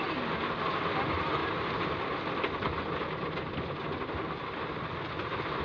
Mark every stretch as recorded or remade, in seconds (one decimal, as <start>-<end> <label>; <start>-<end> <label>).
0.0-5.6 recorded